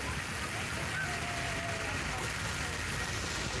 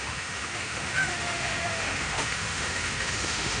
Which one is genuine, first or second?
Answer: first